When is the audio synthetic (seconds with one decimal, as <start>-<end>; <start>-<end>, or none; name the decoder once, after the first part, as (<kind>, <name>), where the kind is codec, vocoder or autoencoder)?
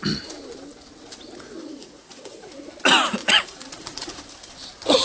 1.6-2.5 (vocoder, Vocos); 3.2-4.2